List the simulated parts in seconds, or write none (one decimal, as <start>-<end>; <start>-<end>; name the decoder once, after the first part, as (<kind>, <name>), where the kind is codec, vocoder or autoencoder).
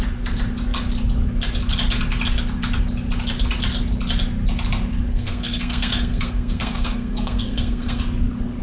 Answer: 5.1-8.0 (codec, SNAC)